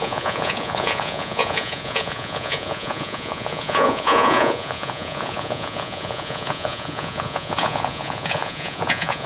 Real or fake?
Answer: fake